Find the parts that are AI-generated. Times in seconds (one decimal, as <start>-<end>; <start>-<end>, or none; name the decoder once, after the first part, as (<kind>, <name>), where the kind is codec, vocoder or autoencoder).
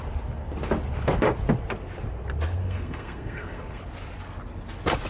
2.6-3.8 (codec, SNAC)